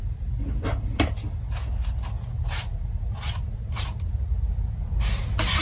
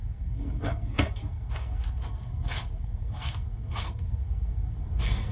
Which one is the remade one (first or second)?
second